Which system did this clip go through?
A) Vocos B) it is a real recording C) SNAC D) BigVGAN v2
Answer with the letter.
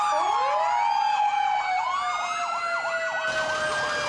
B